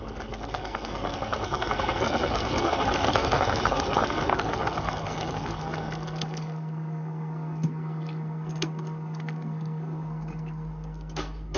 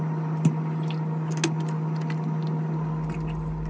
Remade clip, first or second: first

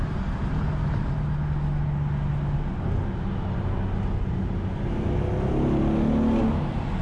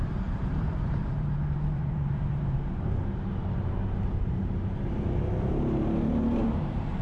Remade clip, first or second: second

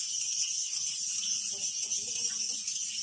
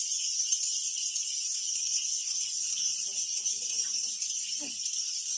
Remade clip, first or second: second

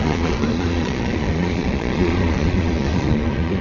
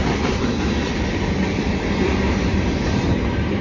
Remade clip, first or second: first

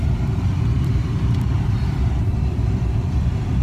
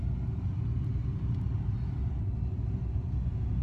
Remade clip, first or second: first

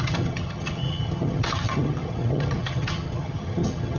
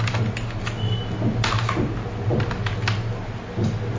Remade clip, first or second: first